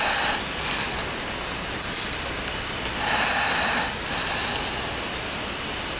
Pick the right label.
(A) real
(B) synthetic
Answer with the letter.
A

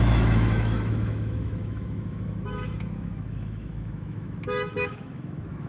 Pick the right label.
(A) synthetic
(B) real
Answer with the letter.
A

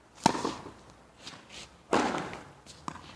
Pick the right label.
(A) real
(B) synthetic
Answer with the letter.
A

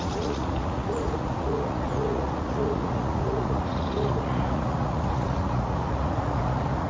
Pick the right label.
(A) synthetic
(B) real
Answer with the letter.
A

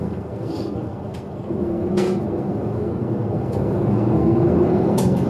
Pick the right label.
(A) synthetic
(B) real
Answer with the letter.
A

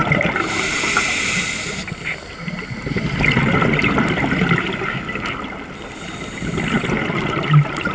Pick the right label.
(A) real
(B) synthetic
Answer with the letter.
A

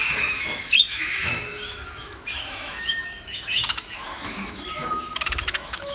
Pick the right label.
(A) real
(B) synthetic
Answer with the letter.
B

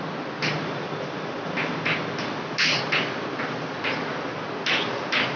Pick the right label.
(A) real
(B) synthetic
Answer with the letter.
A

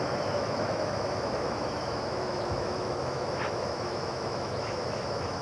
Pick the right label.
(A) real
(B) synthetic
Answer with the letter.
B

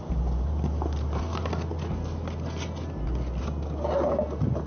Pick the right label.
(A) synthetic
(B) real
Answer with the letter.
B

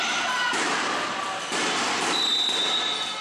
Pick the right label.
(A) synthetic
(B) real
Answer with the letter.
B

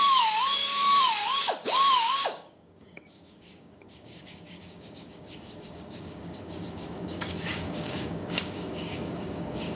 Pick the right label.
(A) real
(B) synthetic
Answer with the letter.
B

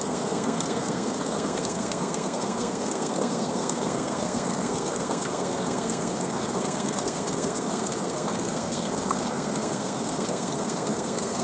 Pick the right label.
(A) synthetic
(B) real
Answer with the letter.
A